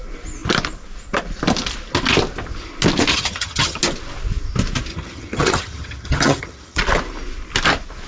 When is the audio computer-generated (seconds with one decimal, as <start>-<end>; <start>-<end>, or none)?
3.1-3.8; 4.9-6.8